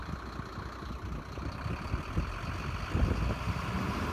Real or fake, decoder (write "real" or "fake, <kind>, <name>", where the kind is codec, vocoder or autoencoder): real